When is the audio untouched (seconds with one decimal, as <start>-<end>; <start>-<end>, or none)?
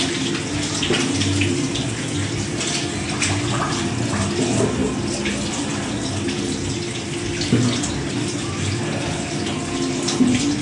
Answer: 0.0-10.6